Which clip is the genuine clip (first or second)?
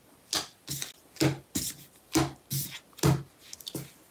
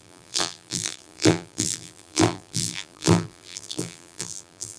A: first